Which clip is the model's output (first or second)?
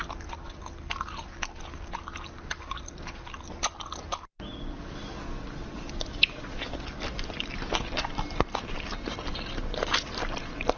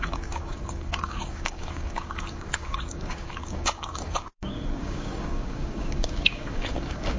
second